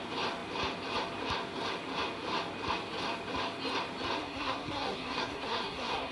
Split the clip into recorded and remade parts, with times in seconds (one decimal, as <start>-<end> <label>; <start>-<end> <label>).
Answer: 0.0-4.2 recorded; 4.2-6.1 remade